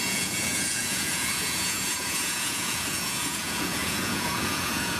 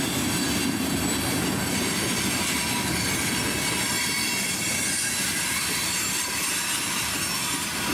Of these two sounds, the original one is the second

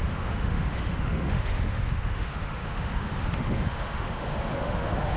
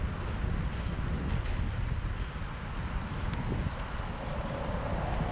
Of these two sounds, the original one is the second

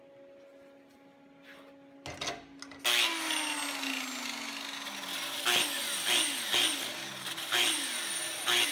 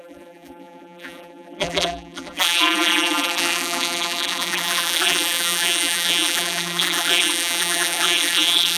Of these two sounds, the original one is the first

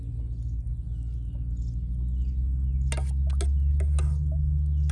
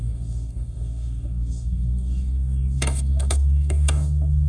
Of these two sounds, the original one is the first